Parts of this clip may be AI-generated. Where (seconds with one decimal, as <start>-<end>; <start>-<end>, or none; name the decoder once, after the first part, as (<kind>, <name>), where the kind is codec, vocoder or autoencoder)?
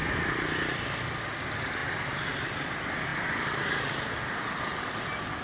none